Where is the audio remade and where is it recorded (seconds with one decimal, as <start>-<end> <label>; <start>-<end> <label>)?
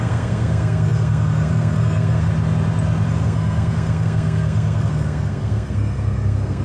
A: 0.0-2.3 remade; 2.3-3.1 recorded; 3.1-6.6 remade